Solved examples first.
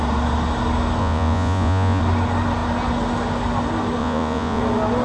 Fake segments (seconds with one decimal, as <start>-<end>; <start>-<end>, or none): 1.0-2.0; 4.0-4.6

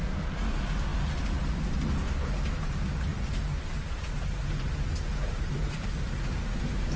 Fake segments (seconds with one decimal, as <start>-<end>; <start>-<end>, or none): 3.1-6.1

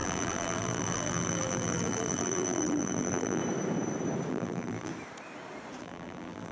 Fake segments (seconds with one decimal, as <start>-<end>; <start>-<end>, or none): 0.0-3.4; 4.3-4.9; 5.8-6.5